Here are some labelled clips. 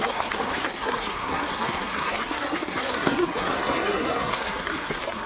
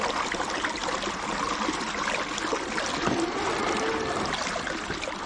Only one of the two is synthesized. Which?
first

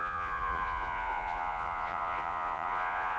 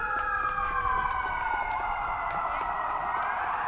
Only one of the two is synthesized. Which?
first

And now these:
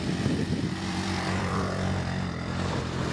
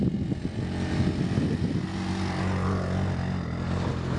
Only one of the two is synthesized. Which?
first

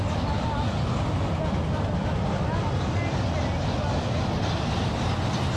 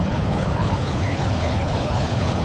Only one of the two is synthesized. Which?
second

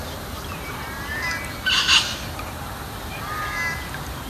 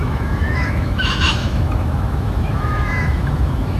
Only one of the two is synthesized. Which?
second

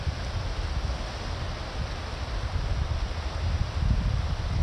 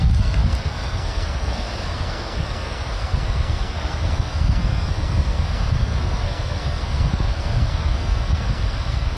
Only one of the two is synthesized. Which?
second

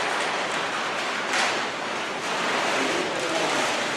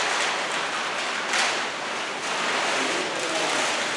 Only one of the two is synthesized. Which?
first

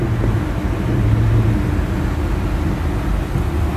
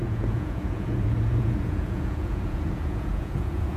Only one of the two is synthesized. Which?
second